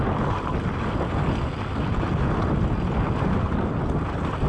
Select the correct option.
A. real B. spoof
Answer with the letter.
A